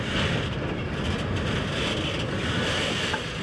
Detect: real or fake real